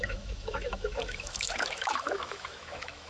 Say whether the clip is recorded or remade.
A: remade